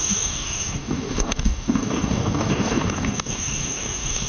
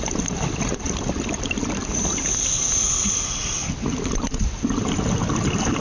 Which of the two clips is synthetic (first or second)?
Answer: first